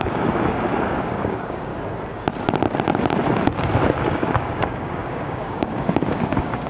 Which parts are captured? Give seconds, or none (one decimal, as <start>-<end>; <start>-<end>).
1.7-4.0